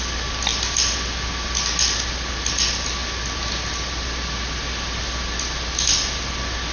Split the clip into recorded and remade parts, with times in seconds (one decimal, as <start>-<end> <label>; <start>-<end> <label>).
0.0-6.7 recorded